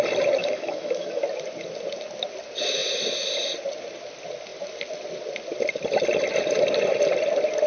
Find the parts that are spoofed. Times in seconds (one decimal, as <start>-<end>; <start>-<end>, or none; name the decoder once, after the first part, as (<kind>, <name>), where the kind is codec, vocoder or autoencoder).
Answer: 0.4-1.2 (autoencoder, DAC-VAE)